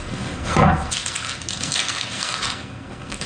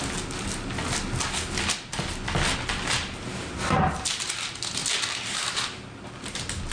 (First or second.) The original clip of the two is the second